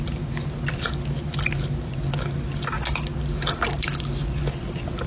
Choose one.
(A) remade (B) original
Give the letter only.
B